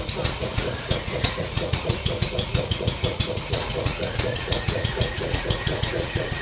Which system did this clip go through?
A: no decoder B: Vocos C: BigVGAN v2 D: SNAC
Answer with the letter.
B